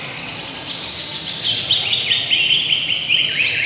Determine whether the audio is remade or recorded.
recorded